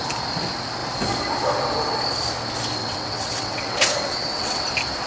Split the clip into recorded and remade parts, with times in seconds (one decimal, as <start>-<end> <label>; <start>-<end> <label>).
0.0-2.8 recorded; 2.8-4.6 remade; 4.6-5.1 recorded